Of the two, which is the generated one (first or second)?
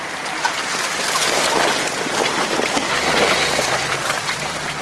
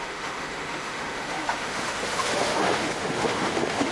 second